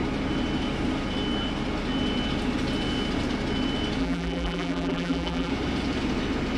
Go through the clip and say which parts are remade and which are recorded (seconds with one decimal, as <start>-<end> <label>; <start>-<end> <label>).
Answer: 0.0-4.0 recorded; 4.0-5.5 remade; 5.5-6.6 recorded